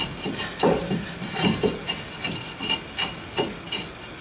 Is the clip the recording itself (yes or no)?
yes